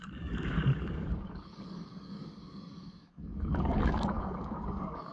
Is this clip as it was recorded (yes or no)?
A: no